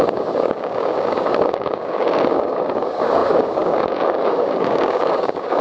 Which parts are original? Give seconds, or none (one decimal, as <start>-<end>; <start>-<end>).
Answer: none